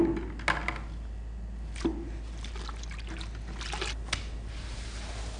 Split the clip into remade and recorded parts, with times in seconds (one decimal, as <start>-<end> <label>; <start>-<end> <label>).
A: 0.0-5.4 recorded